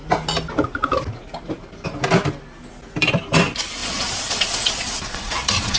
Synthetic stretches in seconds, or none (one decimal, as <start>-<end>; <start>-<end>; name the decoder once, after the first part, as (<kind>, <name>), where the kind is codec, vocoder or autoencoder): 3.8-5.8 (vocoder, Vocos)